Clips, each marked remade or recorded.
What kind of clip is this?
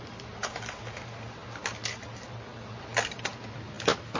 recorded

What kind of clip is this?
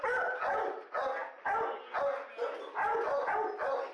recorded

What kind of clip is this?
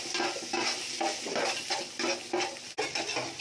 recorded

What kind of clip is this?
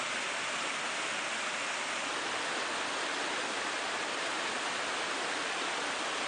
recorded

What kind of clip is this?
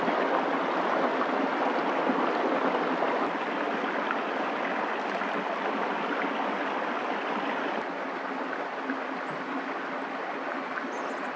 recorded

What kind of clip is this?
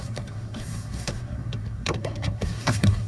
remade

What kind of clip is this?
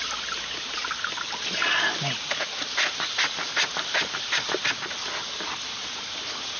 recorded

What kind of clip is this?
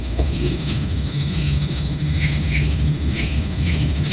remade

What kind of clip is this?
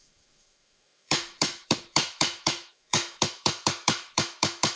remade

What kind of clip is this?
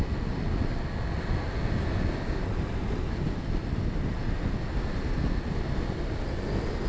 recorded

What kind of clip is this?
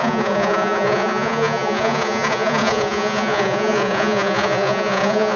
remade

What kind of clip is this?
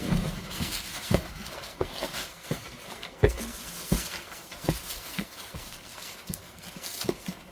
remade